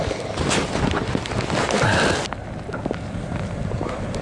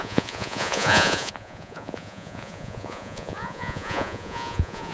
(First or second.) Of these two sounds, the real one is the first